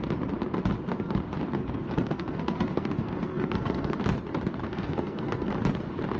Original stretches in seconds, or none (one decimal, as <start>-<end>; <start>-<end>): 0.0-1.6; 4.0-4.6; 5.6-6.2